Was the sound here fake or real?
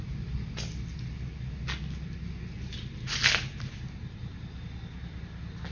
real